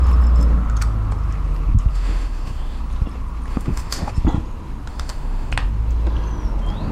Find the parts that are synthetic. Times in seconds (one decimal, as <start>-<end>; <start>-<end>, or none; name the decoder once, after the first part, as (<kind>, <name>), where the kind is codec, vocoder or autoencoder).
1.9-2.8 (autoencoder, DAC-VAE); 3.5-4.1; 4.9-5.5